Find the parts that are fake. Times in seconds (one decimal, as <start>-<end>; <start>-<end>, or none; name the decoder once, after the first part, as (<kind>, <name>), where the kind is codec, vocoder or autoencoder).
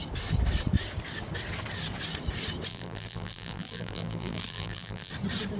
2.7-5.1 (vocoder, BigVGAN v2)